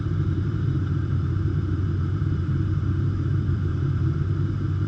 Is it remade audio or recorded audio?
remade